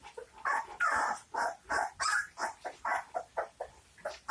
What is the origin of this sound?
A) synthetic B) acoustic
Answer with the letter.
B